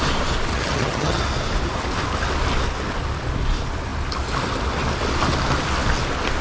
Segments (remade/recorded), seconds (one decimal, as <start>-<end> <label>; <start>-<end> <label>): 0.0-0.5 recorded; 0.5-1.2 remade; 1.2-6.4 recorded